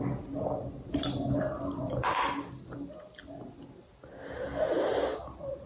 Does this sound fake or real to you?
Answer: real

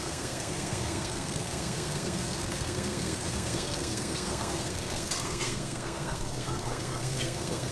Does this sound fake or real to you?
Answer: fake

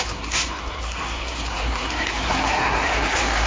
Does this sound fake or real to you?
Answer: fake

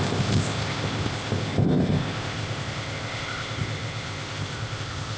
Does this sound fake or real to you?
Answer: fake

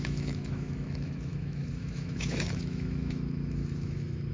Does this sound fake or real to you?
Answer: fake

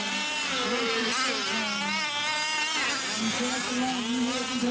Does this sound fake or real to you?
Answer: real